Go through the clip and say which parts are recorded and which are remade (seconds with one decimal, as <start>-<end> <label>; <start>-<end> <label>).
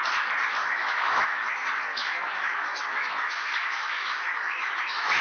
0.0-0.6 recorded; 0.6-1.4 remade; 1.4-1.9 recorded; 1.9-5.2 remade